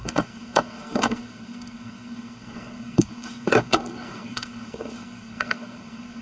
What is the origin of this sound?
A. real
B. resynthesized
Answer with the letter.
B